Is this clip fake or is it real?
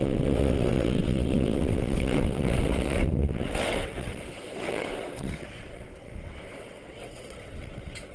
fake